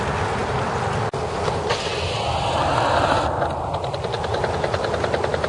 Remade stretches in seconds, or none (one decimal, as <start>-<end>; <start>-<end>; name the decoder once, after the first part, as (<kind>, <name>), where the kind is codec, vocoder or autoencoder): none

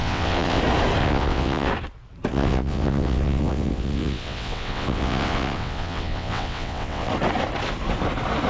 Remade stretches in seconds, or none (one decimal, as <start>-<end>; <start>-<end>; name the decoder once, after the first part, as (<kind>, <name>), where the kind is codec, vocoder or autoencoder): 0.0-0.6 (vocoder, WaveNeXt); 1.0-1.7; 2.3-7.1

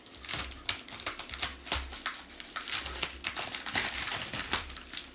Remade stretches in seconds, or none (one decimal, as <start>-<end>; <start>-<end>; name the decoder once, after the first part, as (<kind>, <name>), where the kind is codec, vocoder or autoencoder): none

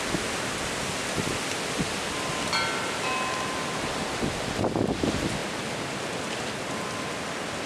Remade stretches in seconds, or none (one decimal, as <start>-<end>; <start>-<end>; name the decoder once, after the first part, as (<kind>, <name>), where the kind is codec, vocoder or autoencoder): none

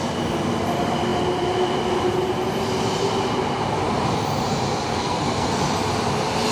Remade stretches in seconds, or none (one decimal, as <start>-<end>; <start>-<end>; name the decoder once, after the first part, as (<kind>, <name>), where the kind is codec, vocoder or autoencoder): 4.9-5.6 (codec, SNAC)

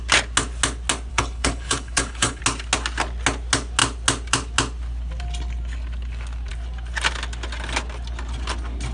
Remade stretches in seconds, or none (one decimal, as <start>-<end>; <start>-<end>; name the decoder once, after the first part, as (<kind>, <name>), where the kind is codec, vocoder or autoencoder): 1.1-2.4 (codec, HILCodec)